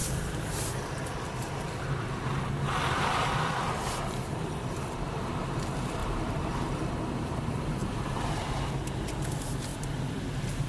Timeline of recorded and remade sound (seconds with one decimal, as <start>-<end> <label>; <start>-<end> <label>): 0.0-6.0 recorded; 6.0-6.9 remade; 6.9-7.8 recorded; 7.8-8.7 remade; 8.7-10.7 recorded